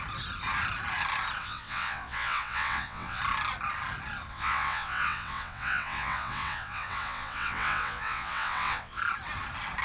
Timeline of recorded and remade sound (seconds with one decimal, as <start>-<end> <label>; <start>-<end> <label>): 0.0-1.4 recorded; 1.4-3.2 remade; 3.2-4.3 recorded; 4.3-9.0 remade; 9.0-9.8 recorded